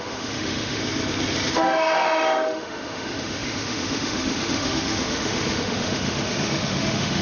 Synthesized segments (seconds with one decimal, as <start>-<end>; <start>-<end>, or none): 0.0-0.8; 1.5-7.2